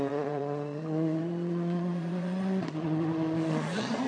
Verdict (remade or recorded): remade